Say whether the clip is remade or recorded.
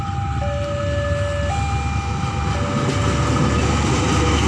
recorded